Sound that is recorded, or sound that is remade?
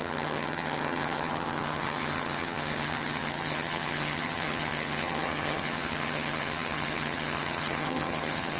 remade